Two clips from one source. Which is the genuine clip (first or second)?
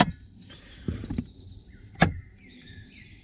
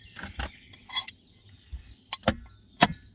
second